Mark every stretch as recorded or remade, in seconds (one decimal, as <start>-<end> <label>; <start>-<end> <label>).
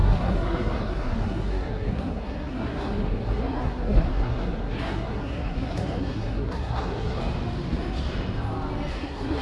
0.0-7.2 remade; 7.2-8.9 recorded; 8.9-9.4 remade